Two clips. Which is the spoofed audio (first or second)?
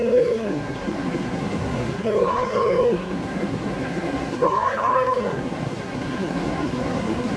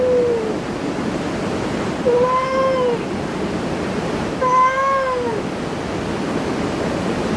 first